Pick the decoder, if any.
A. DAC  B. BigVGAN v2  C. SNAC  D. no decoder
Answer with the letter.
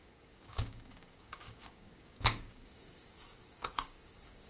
A